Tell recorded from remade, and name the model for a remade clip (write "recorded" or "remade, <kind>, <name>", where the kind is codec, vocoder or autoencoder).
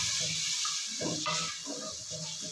recorded